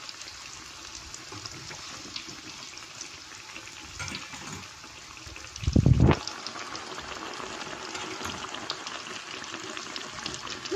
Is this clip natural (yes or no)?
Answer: yes